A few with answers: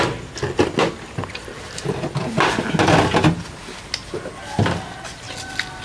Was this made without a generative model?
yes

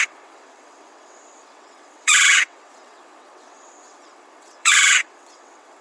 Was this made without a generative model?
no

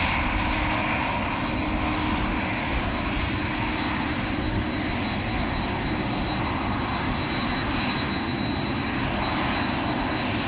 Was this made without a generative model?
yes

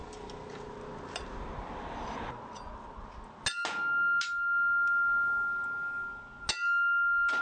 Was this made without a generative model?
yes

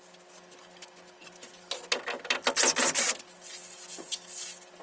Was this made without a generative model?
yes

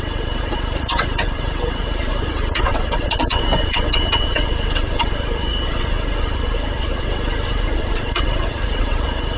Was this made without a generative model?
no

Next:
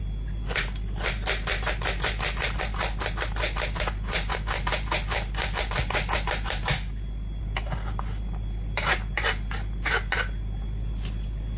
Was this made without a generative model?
yes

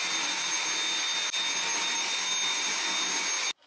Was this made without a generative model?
yes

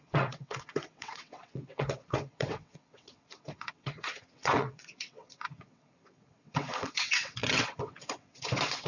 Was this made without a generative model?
no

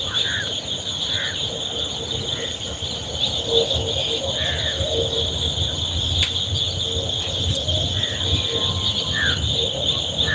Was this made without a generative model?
yes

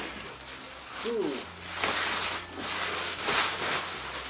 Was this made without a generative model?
yes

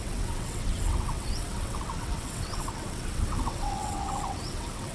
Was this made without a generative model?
no